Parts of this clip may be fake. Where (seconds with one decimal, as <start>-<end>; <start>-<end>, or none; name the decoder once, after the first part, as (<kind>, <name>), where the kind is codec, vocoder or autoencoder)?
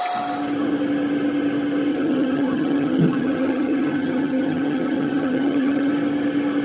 1.9-5.9 (vocoder, HiFi-GAN)